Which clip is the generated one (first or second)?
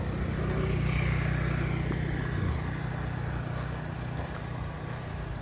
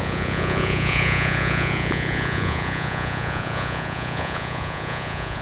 second